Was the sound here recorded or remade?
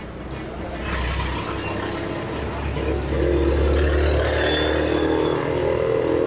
recorded